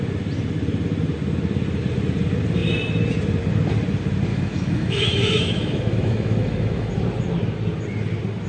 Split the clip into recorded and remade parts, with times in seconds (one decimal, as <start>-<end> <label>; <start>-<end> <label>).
0.0-4.3 recorded; 4.3-6.9 remade; 6.9-8.5 recorded